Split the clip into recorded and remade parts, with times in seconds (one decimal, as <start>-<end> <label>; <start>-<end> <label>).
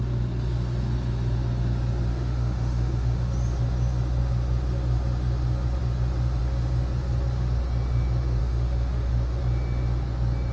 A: 0.0-2.1 recorded; 2.1-3.3 remade; 3.3-8.4 recorded; 8.4-9.4 remade; 9.4-10.5 recorded